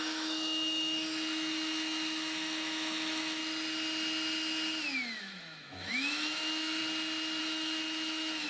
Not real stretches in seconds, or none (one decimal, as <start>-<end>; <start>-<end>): 0.0-3.4; 5.2-6.8; 7.4-8.5